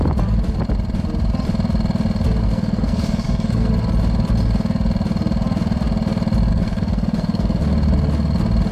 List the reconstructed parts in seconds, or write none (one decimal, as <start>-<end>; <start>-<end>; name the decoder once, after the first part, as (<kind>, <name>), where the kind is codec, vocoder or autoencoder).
2.4-3.7 (codec, SNAC); 6.5-7.6